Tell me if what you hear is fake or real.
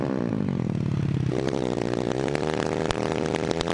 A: real